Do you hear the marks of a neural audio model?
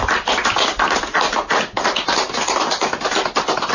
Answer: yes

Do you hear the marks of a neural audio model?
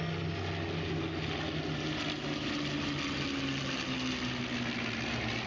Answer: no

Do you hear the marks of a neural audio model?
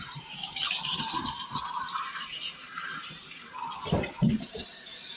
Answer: yes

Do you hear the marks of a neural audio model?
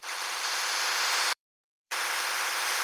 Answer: yes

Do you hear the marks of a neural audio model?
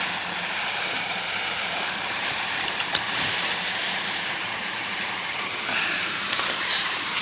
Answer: yes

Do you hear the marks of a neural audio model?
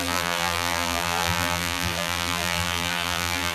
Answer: yes